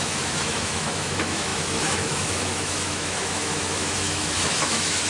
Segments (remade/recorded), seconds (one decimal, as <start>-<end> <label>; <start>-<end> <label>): 0.0-5.1 remade